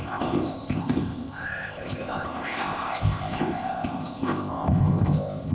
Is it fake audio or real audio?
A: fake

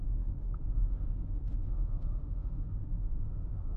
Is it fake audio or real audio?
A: fake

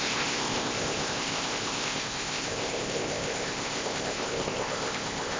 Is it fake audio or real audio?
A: fake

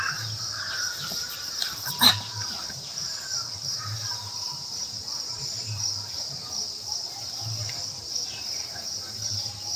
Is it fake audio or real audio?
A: fake